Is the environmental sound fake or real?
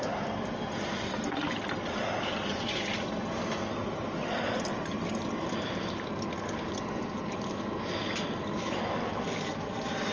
real